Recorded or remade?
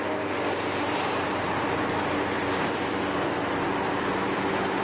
recorded